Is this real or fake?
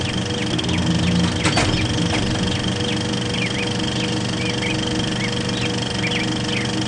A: real